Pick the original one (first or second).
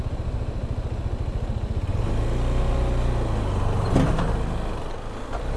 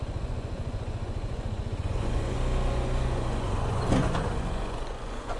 first